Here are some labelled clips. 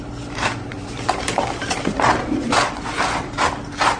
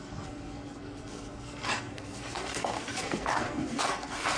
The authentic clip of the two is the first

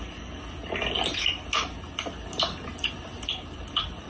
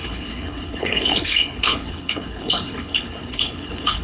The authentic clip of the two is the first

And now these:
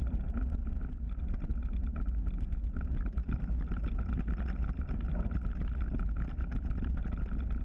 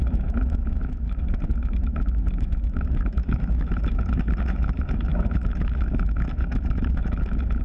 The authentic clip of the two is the first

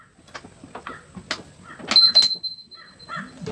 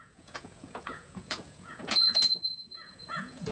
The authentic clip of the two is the first